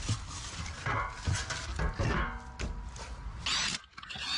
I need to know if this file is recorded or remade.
recorded